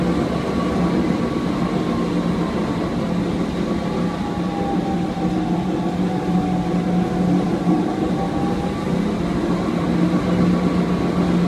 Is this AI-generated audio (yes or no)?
no